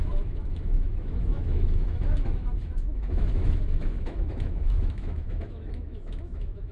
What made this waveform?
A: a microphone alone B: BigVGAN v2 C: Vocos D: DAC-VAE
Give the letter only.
D